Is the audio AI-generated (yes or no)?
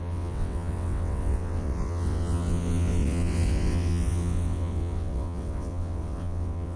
yes